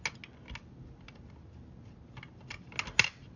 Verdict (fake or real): real